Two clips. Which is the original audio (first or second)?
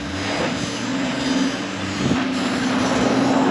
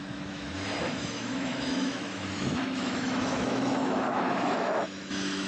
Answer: first